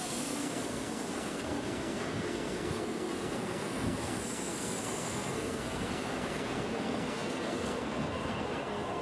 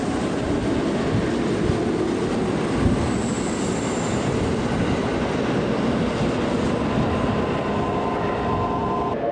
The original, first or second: second